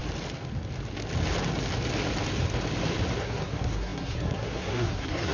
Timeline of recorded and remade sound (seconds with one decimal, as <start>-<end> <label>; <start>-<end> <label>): 0.0-3.2 recorded; 3.2-5.3 remade